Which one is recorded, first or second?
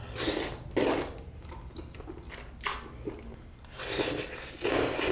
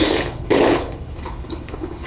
first